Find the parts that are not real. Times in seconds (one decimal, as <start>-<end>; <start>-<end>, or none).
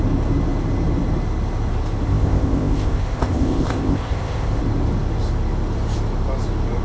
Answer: 2.1-4.6